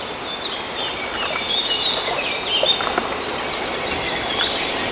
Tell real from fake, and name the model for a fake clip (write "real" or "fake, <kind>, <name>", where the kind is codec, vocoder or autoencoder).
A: real